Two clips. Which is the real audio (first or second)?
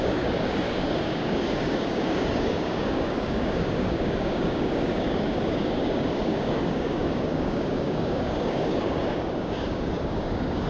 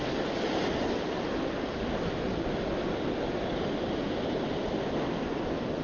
second